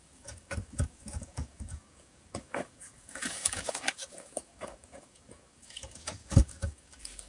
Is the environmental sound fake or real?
fake